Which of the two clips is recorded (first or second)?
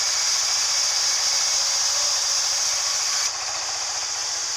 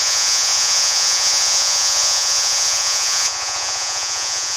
first